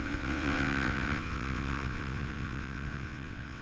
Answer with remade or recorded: remade